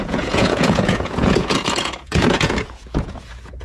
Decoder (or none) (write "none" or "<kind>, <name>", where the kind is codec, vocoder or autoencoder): vocoder, Vocos